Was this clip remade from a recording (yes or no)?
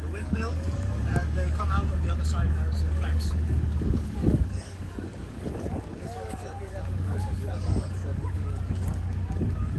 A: yes